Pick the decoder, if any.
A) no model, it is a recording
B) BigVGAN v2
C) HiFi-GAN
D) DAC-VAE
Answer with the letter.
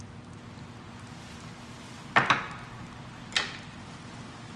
A